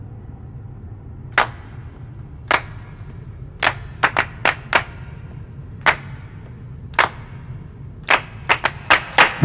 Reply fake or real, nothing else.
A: real